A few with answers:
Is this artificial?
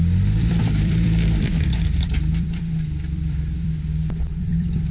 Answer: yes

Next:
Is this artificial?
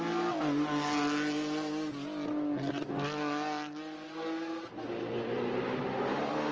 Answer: no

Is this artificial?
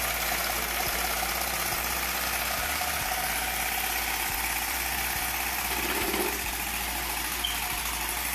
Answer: no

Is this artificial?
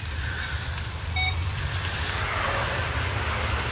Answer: yes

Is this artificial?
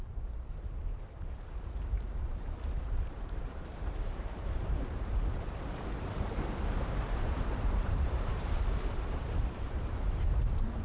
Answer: yes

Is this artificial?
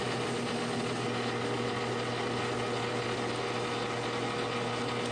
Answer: no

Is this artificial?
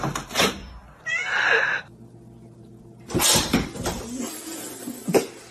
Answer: no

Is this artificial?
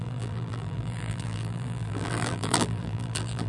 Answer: yes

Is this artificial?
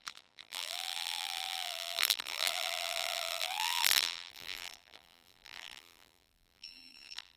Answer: yes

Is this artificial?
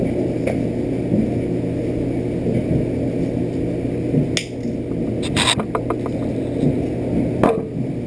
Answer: no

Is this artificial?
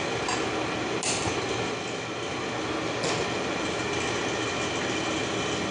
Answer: no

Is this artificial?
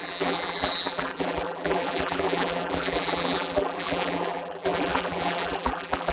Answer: yes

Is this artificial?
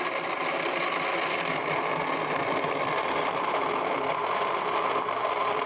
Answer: no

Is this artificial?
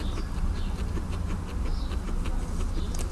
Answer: no